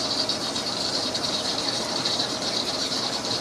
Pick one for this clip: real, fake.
fake